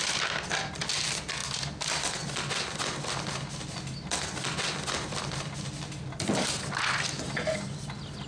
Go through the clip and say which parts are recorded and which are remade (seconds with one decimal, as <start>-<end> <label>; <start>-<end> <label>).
0.0-8.3 recorded